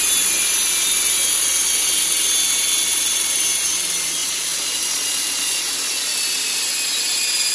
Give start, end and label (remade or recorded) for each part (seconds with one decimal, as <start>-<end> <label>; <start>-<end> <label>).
0.0-4.2 recorded; 4.2-5.7 remade; 5.7-7.5 recorded